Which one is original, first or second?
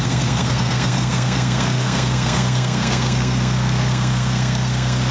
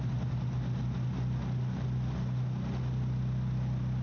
second